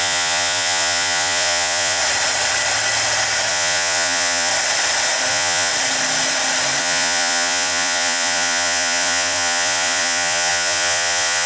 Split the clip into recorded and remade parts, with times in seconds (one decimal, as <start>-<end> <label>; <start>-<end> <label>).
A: 0.0-2.0 remade; 2.0-3.5 recorded; 3.5-4.5 remade; 4.5-5.3 recorded; 5.3-5.7 remade; 5.7-6.8 recorded; 6.8-11.5 remade